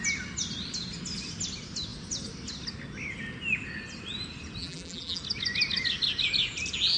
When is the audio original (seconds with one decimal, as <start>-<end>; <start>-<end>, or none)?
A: 0.0-4.6; 5.2-7.0